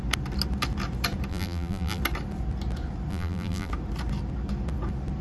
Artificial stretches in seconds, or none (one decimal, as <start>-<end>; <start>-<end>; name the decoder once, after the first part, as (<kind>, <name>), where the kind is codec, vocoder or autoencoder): 1.3-2.0 (vocoder, BigVGAN v2); 3.1-3.7